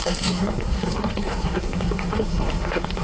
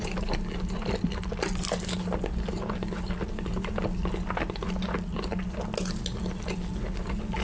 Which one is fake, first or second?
first